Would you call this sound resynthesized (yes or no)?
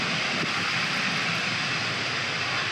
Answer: no